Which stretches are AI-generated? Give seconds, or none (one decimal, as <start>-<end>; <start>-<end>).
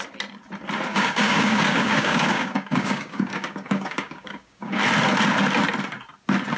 0.9-4.8